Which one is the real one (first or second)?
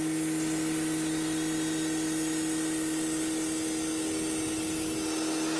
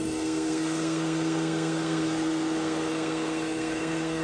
first